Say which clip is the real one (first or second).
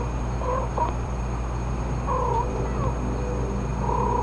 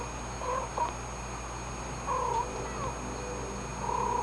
second